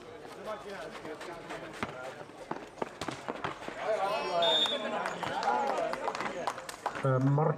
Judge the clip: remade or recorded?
recorded